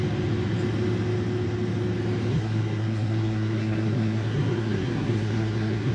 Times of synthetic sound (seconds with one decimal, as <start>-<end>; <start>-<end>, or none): 2.3-5.9